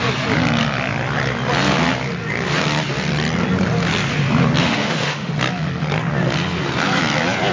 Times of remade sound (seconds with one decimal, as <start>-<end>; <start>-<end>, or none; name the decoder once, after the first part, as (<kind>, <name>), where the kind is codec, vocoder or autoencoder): 4.6-5.3 (autoencoder, DAC-VAE)